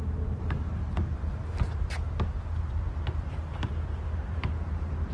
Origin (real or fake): real